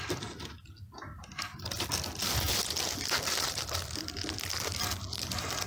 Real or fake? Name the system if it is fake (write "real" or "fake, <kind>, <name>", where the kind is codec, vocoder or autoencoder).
real